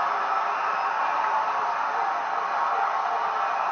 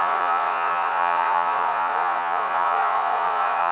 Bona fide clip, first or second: first